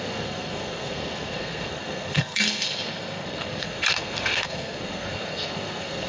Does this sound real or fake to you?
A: fake